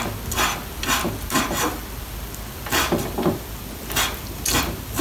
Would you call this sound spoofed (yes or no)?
no